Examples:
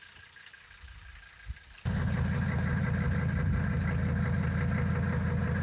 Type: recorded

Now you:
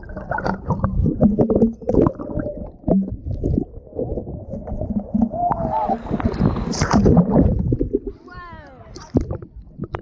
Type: recorded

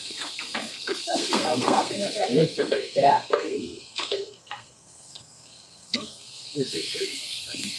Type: remade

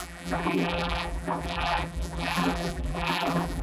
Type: remade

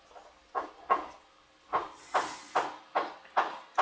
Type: recorded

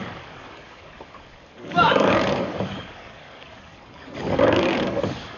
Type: remade